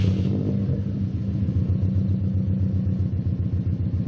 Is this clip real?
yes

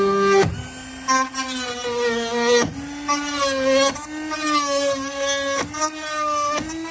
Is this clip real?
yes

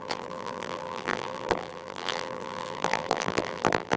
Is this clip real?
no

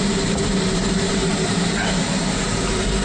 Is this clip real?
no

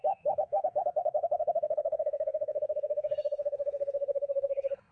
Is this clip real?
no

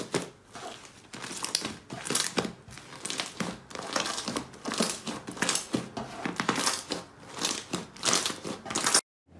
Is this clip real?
yes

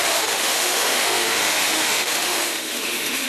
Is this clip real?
no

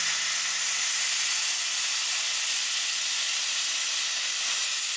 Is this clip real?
yes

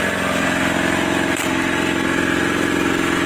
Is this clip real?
yes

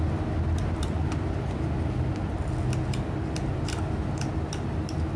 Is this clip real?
yes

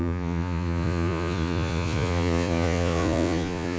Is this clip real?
no